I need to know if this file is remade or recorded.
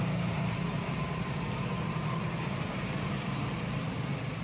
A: remade